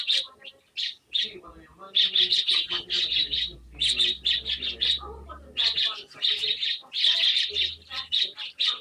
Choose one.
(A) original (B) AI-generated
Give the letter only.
A